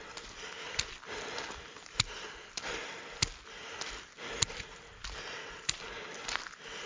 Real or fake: real